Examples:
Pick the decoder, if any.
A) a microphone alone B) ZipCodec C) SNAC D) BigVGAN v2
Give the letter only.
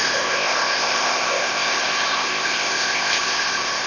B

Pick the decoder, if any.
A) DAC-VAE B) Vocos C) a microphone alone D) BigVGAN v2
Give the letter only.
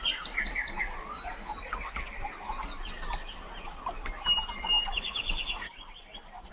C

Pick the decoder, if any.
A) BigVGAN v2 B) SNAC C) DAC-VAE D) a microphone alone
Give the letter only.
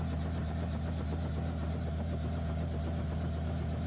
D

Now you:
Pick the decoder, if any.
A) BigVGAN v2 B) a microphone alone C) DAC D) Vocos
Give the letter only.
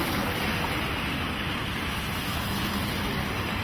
B